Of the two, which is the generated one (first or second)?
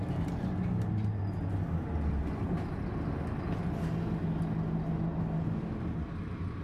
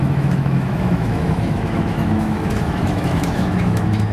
second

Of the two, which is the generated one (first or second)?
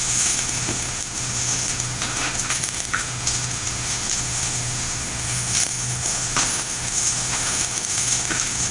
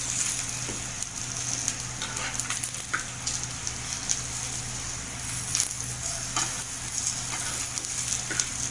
first